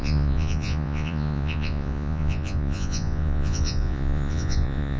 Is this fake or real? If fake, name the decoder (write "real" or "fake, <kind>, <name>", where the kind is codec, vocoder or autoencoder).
fake, vocoder, Vocos